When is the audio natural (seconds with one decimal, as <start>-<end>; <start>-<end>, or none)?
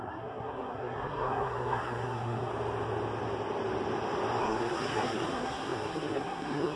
2.5-4.4